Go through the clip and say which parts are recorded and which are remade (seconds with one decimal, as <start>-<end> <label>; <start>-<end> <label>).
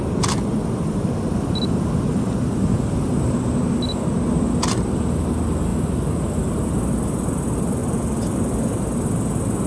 0.0-7.8 recorded; 7.8-8.4 remade; 8.4-9.7 recorded